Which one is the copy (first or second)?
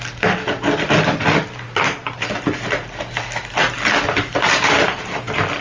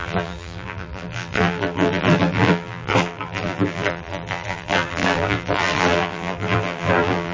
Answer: second